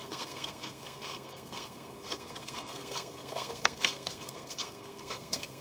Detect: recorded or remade remade